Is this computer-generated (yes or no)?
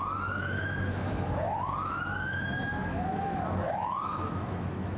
yes